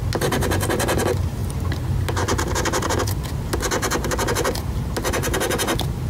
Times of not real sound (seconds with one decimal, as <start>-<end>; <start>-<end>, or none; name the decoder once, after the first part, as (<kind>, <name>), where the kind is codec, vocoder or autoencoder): none